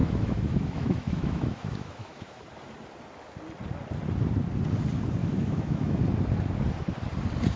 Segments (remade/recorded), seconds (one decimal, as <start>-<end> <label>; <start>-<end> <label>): 0.0-2.4 remade; 2.4-5.2 recorded; 5.2-6.0 remade; 6.0-7.6 recorded